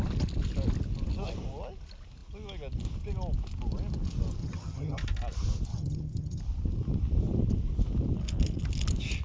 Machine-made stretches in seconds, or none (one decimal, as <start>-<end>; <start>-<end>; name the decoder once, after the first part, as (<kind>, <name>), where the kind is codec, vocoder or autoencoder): 4.4-5.0 (vocoder, HiFi-GAN); 5.7-6.4